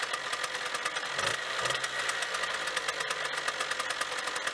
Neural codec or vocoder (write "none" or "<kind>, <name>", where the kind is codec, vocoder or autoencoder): none